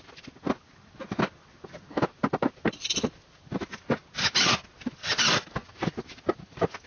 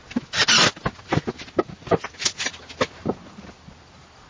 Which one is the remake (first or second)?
first